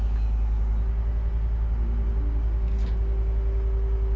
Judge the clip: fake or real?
real